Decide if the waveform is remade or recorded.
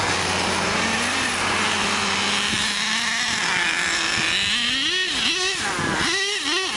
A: recorded